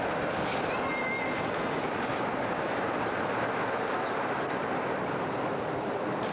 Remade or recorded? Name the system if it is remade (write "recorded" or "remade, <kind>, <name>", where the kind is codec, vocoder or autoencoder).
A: recorded